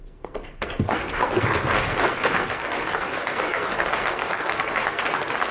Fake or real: fake